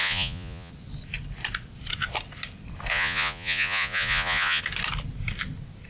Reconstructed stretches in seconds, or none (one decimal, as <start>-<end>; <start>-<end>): 0.0-0.7; 2.9-4.6